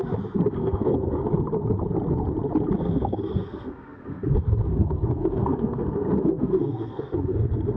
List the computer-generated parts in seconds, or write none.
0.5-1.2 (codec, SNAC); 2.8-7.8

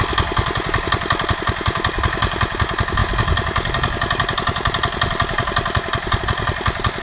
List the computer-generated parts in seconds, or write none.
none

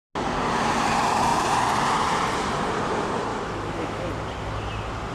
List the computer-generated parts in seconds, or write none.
3.3-4.1 (autoencoder, DAC-VAE)

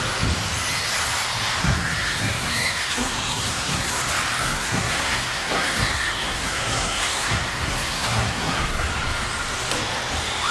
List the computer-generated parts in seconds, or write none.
1.6-4.0 (codec, SNAC); 4.4-8.9

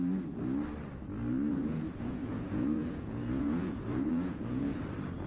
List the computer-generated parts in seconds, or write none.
1.5-4.7 (vocoder, Vocos)